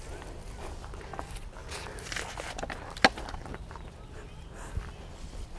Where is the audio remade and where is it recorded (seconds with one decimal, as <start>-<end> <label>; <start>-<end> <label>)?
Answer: 0.0-5.6 recorded